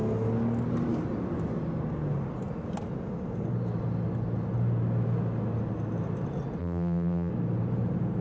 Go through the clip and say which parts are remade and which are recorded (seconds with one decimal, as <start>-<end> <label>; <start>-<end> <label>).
0.0-6.6 recorded; 6.6-7.3 remade; 7.3-8.2 recorded

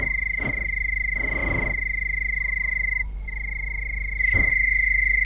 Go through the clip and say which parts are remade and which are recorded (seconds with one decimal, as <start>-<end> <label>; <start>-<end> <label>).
0.0-5.2 recorded

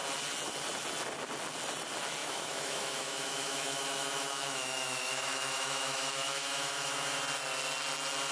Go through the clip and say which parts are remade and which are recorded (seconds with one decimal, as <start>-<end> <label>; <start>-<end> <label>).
0.0-2.2 recorded; 2.2-7.2 remade; 7.2-8.3 recorded

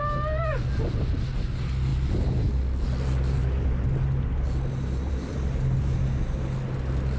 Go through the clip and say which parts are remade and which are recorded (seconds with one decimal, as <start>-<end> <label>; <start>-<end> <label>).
0.0-7.2 recorded

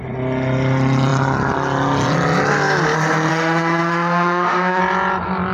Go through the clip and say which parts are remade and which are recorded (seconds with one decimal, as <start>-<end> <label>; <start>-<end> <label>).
0.0-3.3 recorded; 3.3-4.8 remade; 4.8-5.5 recorded

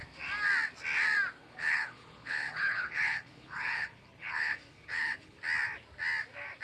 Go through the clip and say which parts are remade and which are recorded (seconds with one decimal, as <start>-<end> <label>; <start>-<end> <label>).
0.0-1.4 recorded; 1.4-5.4 remade; 5.4-6.6 recorded